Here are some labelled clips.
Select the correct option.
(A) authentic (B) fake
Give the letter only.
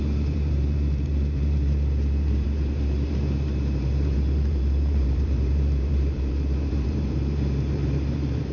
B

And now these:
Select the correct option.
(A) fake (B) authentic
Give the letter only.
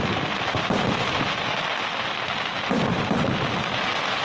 B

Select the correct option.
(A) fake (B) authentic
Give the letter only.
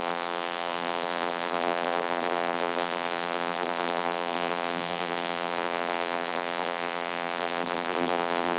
A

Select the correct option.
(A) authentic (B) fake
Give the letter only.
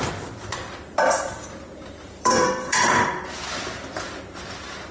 B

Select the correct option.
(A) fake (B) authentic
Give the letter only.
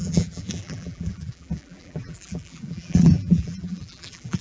A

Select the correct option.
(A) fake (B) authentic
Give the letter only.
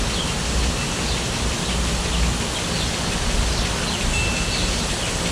B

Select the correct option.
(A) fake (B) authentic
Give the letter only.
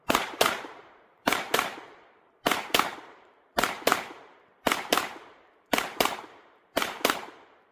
A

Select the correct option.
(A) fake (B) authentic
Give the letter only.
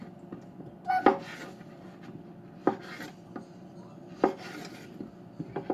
B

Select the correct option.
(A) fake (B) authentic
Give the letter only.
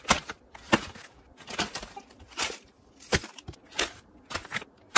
B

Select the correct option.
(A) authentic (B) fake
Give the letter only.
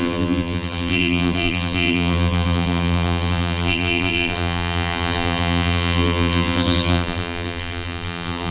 B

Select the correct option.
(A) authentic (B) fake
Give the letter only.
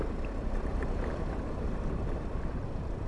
B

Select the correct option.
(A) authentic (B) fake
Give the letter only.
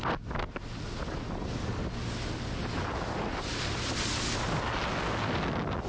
A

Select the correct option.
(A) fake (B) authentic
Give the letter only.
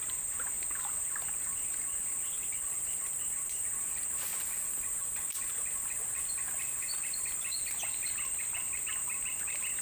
B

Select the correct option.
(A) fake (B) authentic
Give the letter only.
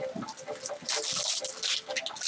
B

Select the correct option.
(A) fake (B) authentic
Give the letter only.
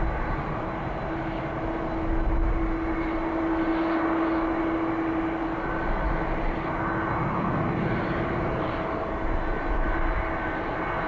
B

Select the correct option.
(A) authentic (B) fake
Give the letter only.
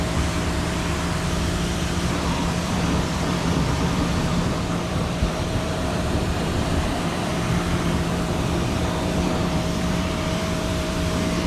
B